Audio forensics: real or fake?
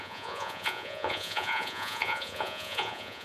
fake